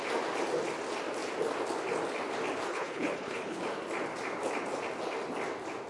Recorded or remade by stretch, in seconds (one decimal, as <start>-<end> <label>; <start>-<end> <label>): 0.0-2.7 recorded; 2.7-3.6 remade; 3.6-5.9 recorded